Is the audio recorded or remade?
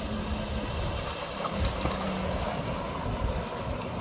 recorded